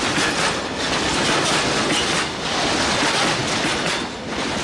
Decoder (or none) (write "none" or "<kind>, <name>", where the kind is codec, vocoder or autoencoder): none